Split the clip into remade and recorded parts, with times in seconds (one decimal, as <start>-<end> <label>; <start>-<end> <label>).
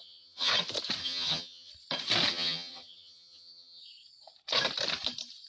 0.0-0.5 remade; 0.5-1.0 recorded; 1.0-1.7 remade; 1.7-2.3 recorded; 2.3-3.8 remade; 3.8-5.5 recorded